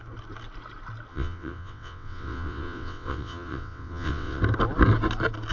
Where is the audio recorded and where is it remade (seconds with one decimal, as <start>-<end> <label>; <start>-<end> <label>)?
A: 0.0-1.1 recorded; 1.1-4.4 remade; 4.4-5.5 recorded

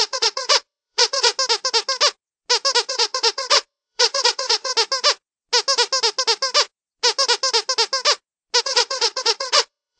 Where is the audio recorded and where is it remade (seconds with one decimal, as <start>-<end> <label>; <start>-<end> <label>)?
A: 0.0-1.3 remade; 1.3-2.9 recorded; 2.9-4.7 remade; 4.7-8.6 recorded; 8.6-10.0 remade

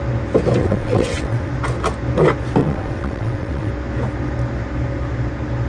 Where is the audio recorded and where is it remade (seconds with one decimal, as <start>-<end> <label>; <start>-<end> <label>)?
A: 0.0-0.6 recorded; 0.6-1.5 remade; 1.5-2.6 recorded; 2.6-3.7 remade; 3.7-5.7 recorded